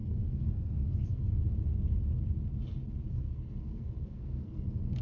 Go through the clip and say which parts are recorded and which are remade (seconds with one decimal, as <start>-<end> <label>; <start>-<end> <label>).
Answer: 0.0-1.4 remade; 1.4-3.1 recorded; 3.1-5.0 remade